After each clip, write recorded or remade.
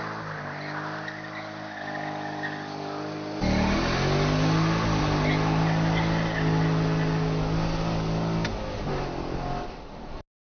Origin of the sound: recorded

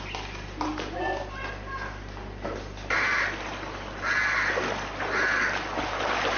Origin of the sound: recorded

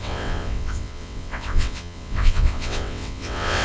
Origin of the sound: remade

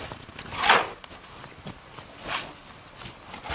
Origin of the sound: recorded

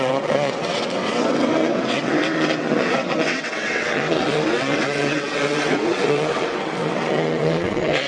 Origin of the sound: remade